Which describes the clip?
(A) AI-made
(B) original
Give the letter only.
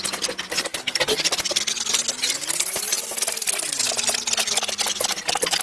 B